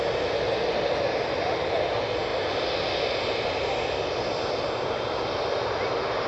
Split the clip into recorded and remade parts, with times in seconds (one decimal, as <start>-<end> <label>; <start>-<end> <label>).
0.0-6.3 recorded